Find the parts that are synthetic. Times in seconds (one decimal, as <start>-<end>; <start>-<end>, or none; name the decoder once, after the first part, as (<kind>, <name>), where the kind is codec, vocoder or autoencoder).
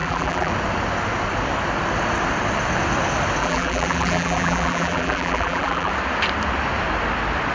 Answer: 0.0-0.5 (vocoder, BigVGAN v2); 3.4-5.9